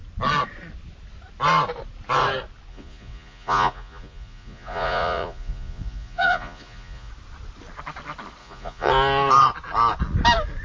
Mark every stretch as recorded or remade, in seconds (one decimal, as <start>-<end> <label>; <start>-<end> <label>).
0.0-2.7 recorded; 2.7-7.1 remade; 7.1-8.4 recorded; 8.4-8.9 remade; 8.9-10.6 recorded